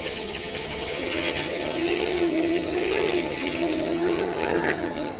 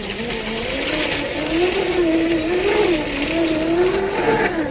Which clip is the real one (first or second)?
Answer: second